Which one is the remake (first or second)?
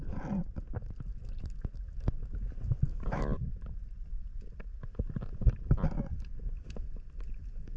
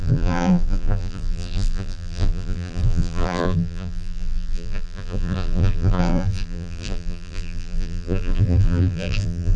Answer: second